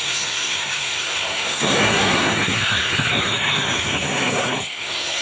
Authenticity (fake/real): fake